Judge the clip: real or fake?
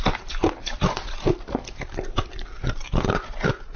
real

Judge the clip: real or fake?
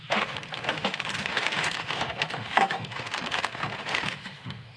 fake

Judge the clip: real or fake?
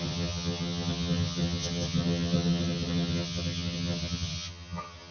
fake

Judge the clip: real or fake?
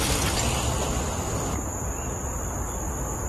real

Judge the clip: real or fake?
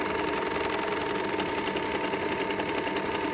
real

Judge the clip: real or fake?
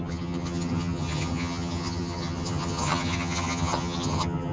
fake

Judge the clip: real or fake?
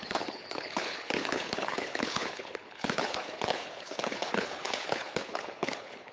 fake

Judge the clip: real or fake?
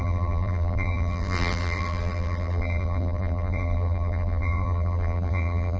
fake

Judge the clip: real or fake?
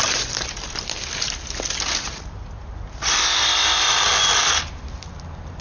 real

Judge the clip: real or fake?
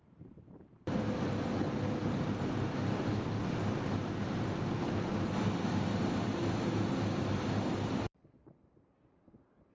fake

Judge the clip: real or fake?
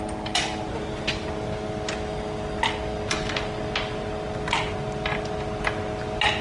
real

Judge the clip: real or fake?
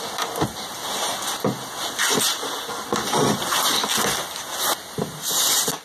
real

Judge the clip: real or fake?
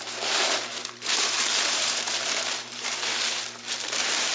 fake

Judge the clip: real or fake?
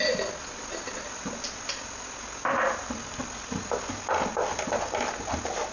real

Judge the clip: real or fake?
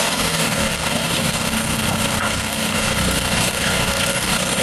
fake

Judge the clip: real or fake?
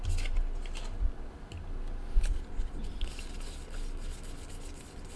real